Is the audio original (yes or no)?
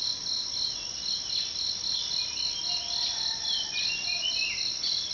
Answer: yes